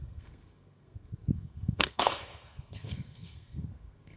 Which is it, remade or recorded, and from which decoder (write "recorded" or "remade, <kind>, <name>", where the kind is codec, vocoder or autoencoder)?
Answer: remade, codec, SNAC